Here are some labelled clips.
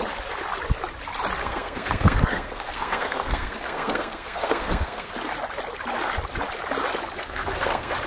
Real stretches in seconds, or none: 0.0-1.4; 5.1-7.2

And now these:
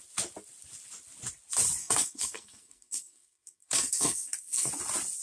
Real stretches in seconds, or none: 0.0-1.8; 4.7-5.2